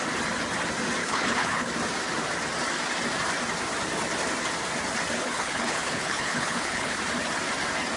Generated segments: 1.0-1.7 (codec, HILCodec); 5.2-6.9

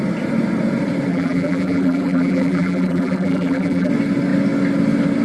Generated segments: 1.1-3.9 (vocoder, BigVGAN v2)

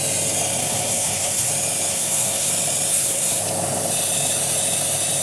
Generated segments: 0.6-1.5 (codec, SNAC); 1.9-2.5; 2.9-3.4

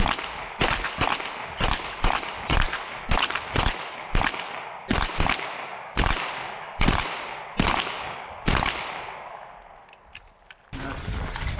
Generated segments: none